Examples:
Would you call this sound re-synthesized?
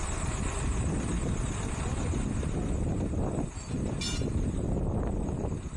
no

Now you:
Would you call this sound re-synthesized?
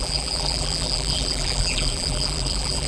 yes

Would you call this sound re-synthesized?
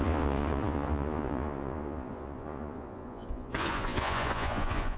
yes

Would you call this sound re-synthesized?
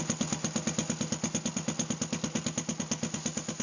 no